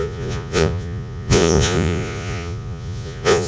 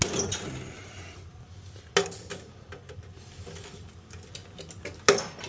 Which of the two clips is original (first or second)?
second